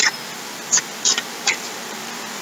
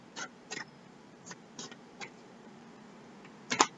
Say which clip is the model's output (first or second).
second